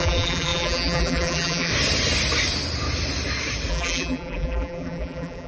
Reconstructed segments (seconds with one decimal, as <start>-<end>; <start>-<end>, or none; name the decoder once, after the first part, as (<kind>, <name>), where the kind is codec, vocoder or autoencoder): 0.0-1.7 (vocoder, BigVGAN v2); 3.7-5.5